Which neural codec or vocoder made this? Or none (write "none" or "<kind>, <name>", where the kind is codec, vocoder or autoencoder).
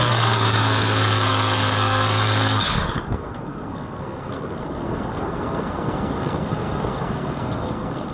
codec, SNAC